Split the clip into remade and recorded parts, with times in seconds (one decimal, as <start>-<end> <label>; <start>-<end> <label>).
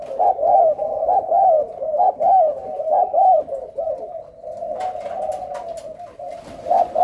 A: 0.0-2.6 recorded; 2.6-4.2 remade; 4.2-6.1 recorded; 6.1-7.0 remade